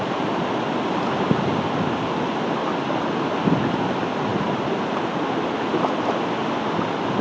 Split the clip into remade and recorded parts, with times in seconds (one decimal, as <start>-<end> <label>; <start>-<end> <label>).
0.0-4.3 recorded; 4.3-5.1 remade; 5.1-7.2 recorded

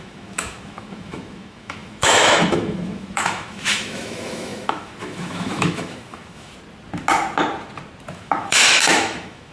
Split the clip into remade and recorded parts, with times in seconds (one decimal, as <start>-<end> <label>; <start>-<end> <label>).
0.0-6.5 remade; 6.5-8.1 recorded; 8.1-9.5 remade

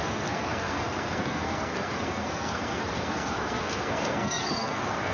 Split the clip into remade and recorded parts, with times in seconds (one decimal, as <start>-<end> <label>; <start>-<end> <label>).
0.0-5.1 remade

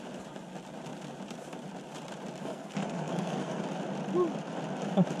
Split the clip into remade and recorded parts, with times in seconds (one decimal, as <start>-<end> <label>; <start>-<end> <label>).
0.0-2.4 recorded; 2.4-3.6 remade; 3.6-5.2 recorded